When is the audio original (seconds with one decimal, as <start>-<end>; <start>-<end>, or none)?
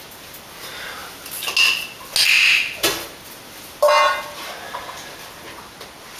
0.0-6.2